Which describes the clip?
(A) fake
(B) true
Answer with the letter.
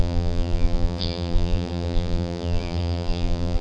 A